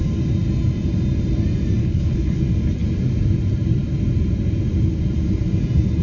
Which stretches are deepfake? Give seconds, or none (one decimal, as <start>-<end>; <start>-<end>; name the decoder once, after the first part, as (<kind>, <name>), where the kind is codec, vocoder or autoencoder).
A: 1.8-2.4 (codec, HILCodec)